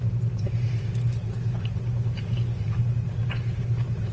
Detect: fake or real real